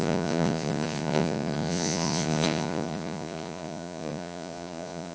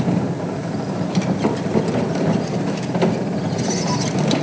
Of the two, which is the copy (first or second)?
first